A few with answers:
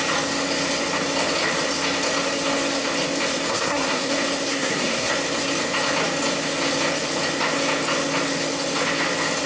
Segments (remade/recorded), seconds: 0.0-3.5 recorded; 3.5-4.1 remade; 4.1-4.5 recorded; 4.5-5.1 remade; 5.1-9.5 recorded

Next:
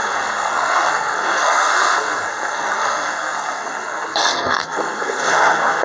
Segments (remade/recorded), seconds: 0.0-5.8 remade

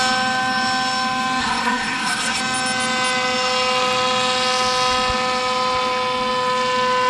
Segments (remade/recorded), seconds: 0.0-1.4 recorded; 1.4-2.4 remade; 2.4-7.1 recorded

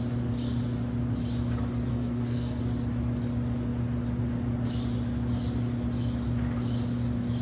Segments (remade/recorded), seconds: 0.0-1.9 recorded; 1.9-2.6 remade; 2.6-7.4 recorded

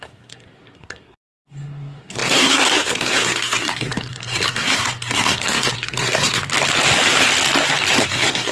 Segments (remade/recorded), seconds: 0.0-6.4 remade; 6.4-8.0 recorded; 8.0-8.5 remade